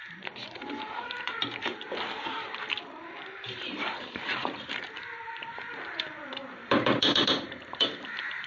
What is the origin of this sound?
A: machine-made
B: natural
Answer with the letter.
A